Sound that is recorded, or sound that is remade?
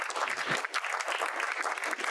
recorded